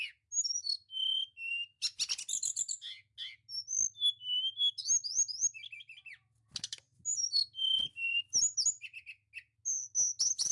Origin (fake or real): real